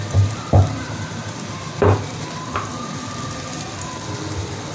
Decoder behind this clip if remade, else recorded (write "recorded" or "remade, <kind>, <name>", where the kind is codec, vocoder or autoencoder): recorded